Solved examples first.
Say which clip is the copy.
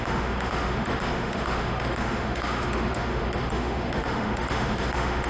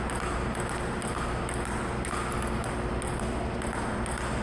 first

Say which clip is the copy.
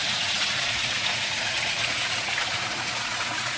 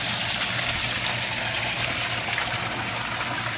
first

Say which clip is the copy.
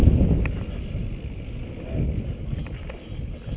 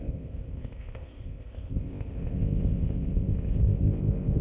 second